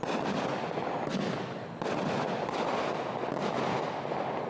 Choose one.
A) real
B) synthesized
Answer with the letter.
A